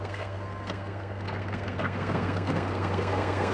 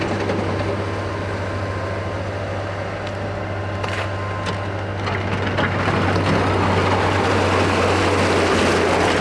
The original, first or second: second